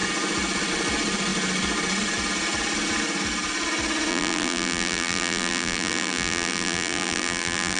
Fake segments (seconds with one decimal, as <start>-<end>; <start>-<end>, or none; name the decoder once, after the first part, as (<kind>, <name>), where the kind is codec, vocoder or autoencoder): 4.1-7.8 (vocoder, BigVGAN v2)